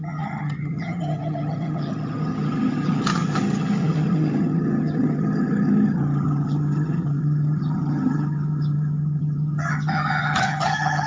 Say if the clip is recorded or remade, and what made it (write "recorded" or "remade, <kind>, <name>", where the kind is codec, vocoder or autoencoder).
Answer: remade, vocoder, HiFi-GAN